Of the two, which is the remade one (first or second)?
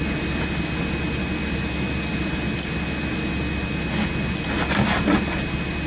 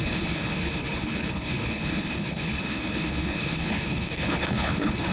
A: second